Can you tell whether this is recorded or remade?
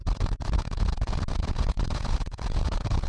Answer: remade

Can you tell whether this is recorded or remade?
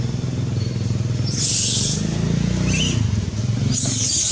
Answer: recorded